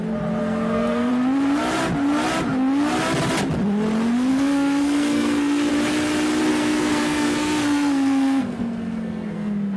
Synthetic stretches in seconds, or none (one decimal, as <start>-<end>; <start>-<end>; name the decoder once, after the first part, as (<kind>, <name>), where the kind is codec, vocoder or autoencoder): 0.4-1.1 (codec, SNAC); 4.3-5.7; 6.5-9.8